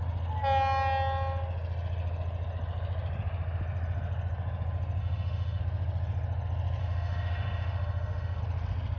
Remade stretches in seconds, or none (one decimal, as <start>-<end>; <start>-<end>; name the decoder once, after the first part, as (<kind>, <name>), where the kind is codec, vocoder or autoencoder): 5.0-5.6 (autoencoder, DAC-VAE); 6.8-8.4